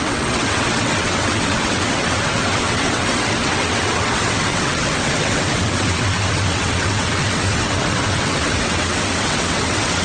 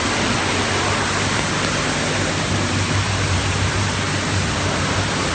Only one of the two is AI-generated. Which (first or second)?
first